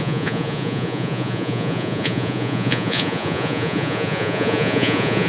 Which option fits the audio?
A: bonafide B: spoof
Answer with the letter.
B